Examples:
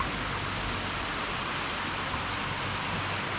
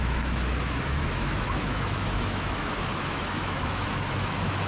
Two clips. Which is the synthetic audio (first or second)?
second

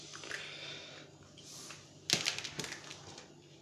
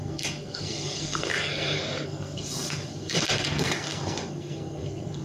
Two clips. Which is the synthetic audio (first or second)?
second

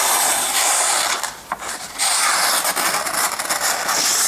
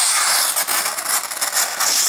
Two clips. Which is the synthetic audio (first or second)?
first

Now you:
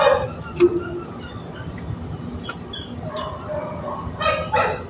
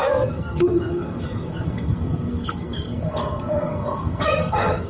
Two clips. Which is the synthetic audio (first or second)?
second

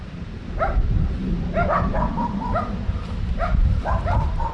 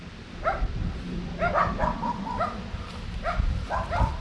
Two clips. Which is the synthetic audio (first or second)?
first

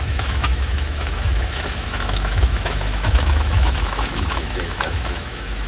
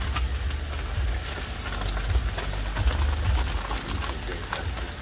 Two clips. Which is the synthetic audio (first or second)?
first